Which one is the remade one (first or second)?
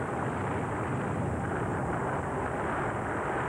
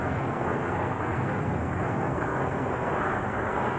second